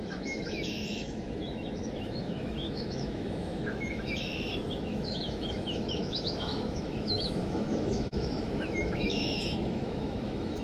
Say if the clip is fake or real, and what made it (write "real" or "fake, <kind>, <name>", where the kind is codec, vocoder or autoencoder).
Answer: fake, autoencoder, DAC-VAE